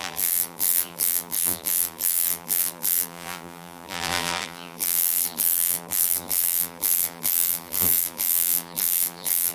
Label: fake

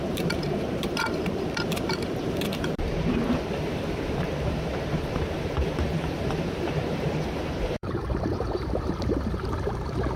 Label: fake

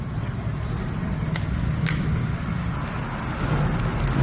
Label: real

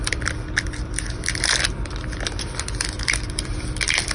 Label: fake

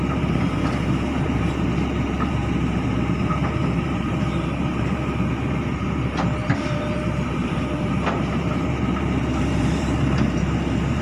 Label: fake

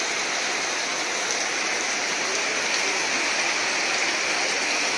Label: real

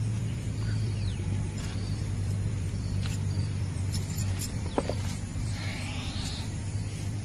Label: fake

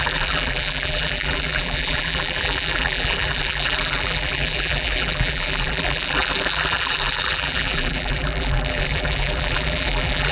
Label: fake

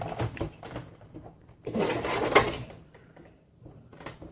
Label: fake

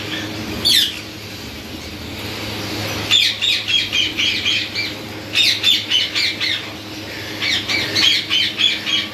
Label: real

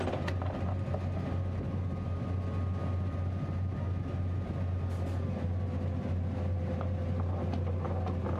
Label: real